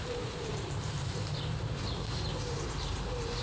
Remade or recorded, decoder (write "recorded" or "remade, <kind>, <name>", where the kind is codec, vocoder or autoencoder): remade, vocoder, BigVGAN v2